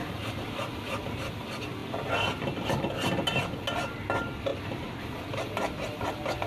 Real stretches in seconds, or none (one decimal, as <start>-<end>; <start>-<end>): 1.3-4.5; 5.0-6.5